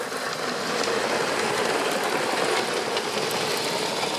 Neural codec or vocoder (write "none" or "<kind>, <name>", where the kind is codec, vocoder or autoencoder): none